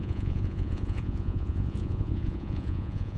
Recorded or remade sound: remade